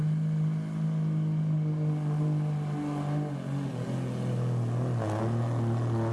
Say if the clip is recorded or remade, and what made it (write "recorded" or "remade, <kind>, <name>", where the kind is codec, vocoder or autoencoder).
recorded